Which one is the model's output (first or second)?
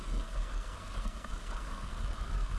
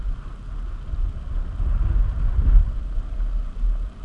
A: first